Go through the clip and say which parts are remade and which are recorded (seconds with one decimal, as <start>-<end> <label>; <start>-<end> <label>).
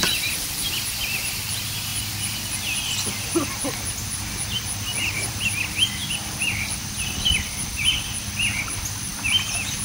0.0-9.8 recorded